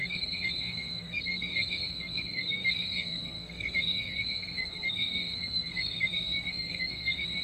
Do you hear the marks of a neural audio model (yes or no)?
yes